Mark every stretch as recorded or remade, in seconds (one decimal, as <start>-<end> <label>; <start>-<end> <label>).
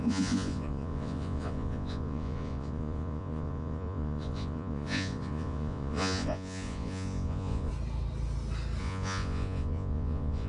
0.0-7.7 remade; 7.7-8.8 recorded; 8.8-10.5 remade